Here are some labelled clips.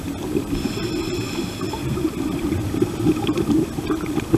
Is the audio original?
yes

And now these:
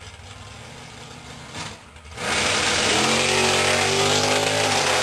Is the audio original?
yes